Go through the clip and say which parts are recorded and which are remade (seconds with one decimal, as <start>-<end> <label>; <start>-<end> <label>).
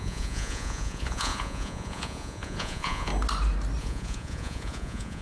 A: 0.0-3.1 remade; 3.1-3.8 recorded; 3.8-5.2 remade